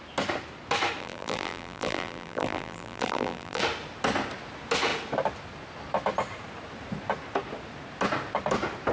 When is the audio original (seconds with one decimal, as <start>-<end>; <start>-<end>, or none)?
0.0-1.0; 3.6-8.9